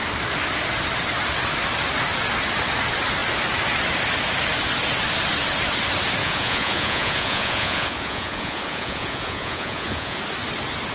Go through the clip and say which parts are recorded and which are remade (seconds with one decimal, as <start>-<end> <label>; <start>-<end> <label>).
0.0-6.2 recorded; 6.2-10.2 remade; 10.2-10.9 recorded